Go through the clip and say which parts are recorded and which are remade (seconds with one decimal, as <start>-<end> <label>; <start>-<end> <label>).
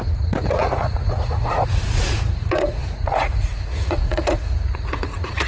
0.0-5.5 remade